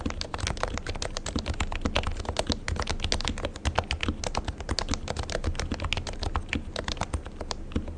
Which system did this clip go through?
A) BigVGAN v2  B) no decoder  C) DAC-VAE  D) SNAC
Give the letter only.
B